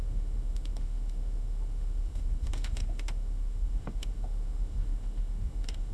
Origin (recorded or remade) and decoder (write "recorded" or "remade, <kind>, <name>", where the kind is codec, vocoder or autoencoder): remade, autoencoder, DAC-VAE